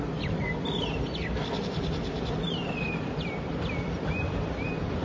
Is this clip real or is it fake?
real